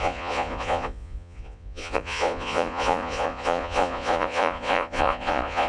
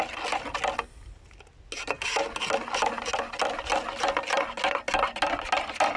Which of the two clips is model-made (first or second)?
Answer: first